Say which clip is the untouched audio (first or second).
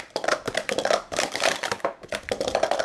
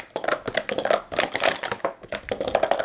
second